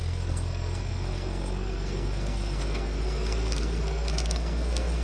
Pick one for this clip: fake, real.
fake